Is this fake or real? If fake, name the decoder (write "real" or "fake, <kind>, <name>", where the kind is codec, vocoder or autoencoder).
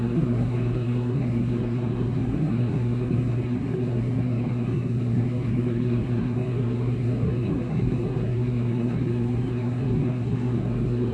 fake, codec, SNAC